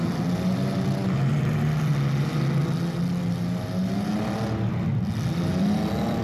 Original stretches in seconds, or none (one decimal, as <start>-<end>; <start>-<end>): 0.0-6.2